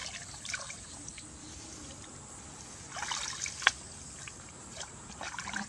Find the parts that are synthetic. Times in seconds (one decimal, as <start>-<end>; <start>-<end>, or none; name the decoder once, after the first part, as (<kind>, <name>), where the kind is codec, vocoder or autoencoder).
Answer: 0.0-1.1 (vocoder, BigVGAN v2); 4.3-5.7